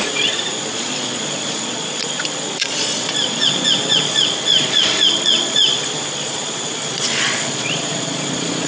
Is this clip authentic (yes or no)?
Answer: no